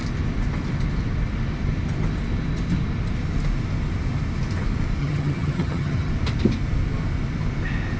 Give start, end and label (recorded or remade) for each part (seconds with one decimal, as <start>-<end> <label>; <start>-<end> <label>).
0.0-5.0 recorded; 5.0-6.1 remade; 6.1-8.0 recorded